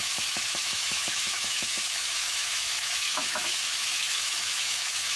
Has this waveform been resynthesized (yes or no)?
yes